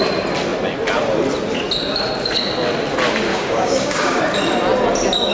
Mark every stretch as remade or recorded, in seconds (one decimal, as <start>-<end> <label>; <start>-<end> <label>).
0.0-3.3 recorded; 3.3-4.2 remade; 4.2-5.3 recorded